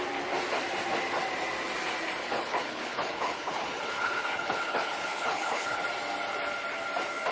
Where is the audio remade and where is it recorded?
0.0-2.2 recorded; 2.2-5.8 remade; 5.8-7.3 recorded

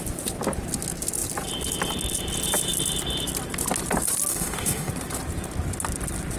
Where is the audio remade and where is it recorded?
0.0-4.3 recorded; 4.3-4.9 remade; 4.9-6.4 recorded

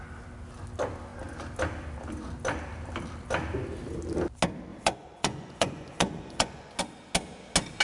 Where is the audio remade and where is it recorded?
0.0-4.7 recorded; 4.7-6.8 remade; 6.8-7.8 recorded

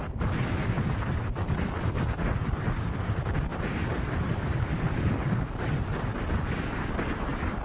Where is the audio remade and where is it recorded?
0.0-3.5 recorded; 3.5-4.6 remade; 4.6-7.6 recorded

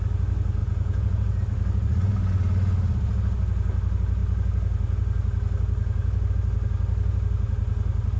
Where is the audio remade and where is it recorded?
0.0-0.6 recorded; 0.6-1.4 remade; 1.4-8.2 recorded